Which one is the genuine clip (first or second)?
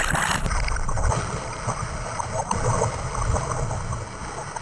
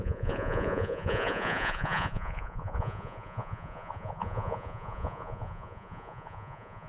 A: first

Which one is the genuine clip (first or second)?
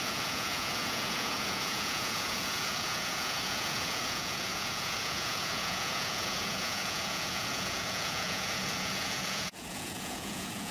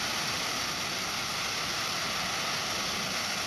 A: second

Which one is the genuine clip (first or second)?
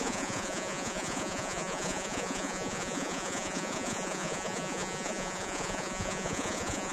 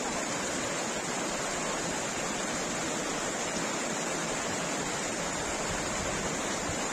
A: second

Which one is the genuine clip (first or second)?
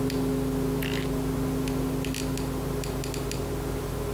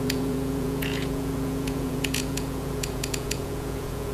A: first